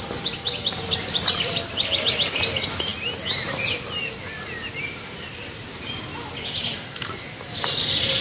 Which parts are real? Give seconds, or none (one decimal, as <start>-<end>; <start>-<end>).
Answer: 0.0-8.2